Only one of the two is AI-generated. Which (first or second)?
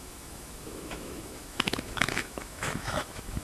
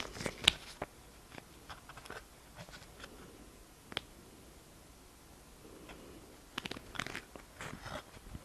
first